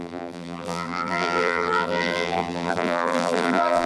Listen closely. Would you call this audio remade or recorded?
remade